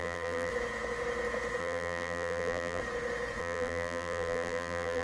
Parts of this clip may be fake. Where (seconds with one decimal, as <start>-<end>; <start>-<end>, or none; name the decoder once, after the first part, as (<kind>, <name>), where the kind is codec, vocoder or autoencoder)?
0.0-0.5 (vocoder, BigVGAN v2); 1.6-2.8; 3.4-5.0